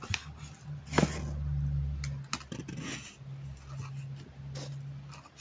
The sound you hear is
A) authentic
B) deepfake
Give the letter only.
A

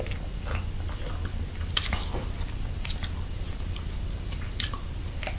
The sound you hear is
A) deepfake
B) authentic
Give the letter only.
B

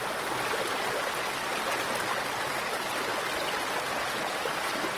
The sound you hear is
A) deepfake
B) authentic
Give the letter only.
B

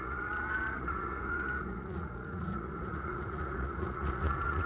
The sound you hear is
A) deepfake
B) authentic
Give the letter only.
A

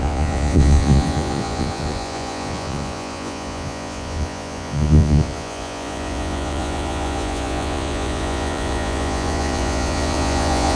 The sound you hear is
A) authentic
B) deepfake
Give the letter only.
B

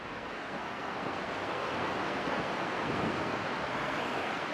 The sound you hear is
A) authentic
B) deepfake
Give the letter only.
B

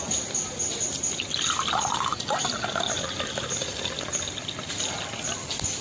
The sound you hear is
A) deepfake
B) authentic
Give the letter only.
B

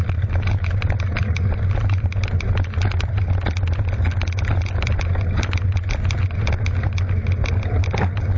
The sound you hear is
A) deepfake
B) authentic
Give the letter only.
B